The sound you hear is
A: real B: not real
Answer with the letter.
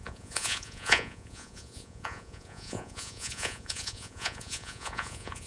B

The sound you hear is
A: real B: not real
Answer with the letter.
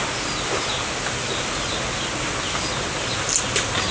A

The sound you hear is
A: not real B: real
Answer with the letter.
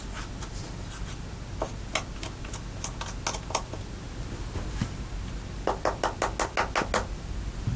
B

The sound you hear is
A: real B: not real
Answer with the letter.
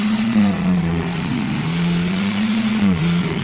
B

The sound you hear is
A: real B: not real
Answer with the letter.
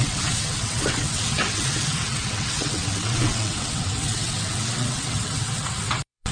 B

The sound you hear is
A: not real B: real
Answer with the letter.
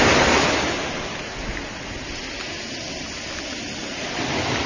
B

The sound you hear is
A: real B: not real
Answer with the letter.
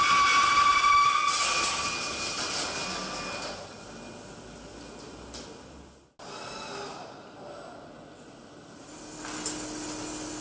A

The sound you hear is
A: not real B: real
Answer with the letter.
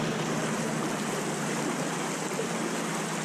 B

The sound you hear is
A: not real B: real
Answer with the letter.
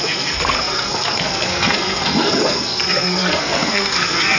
A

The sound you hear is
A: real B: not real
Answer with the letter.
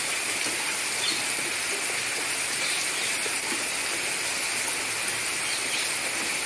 A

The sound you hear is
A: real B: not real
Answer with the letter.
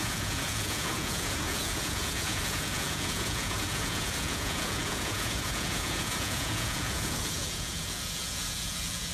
B